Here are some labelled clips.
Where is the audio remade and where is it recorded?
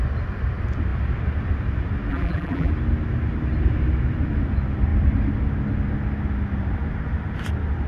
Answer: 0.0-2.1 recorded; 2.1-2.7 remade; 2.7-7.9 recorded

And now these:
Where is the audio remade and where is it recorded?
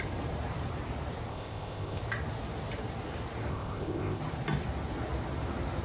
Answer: 0.0-1.3 recorded; 1.3-2.0 remade; 2.0-3.5 recorded; 3.5-4.2 remade; 4.2-5.8 recorded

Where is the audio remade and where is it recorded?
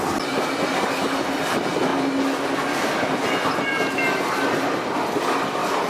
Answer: 0.0-5.9 recorded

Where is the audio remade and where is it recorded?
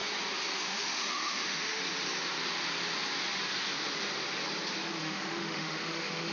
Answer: 0.0-0.6 recorded; 0.6-1.8 remade; 1.8-5.0 recorded; 5.0-6.3 remade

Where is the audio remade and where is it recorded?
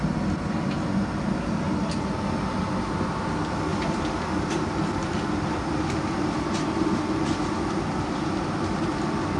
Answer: 0.0-3.7 recorded; 3.7-4.7 remade; 4.7-7.4 recorded; 7.4-8.1 remade; 8.1-9.4 recorded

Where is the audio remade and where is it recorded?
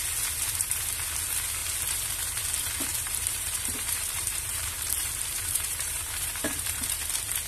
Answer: 0.0-2.9 recorded; 2.9-7.0 remade; 7.0-7.5 recorded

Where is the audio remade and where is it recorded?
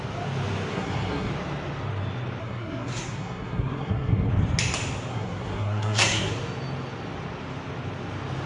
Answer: 0.0-0.7 recorded; 0.7-1.3 remade; 1.3-2.4 recorded; 2.4-4.3 remade; 4.3-5.1 recorded; 5.1-6.3 remade; 6.3-8.5 recorded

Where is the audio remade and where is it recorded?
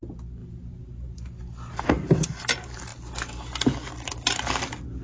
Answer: 0.0-5.0 recorded